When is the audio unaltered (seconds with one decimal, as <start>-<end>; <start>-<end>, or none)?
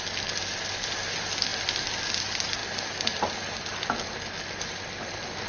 0.0-5.5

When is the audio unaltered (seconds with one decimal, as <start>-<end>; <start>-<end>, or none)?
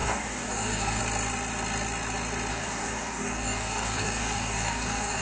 1.0-2.5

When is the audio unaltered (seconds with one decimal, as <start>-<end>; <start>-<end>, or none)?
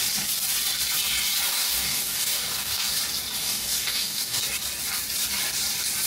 0.0-1.5; 3.0-3.4; 4.4-6.1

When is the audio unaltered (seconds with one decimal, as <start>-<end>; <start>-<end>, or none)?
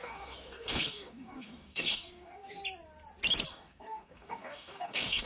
2.6-3.5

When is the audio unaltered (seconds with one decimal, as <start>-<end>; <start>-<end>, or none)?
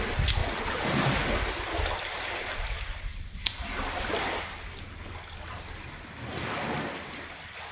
0.0-7.7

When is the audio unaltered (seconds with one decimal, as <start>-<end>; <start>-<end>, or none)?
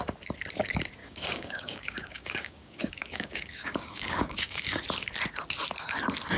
0.0-1.0; 4.8-6.4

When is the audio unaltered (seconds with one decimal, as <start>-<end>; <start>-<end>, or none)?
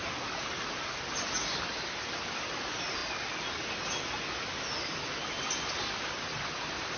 0.0-7.0